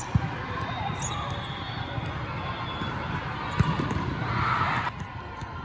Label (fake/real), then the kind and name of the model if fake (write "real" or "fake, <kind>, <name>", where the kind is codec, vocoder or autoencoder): real